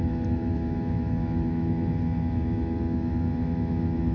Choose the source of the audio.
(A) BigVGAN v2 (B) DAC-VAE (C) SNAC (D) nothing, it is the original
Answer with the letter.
B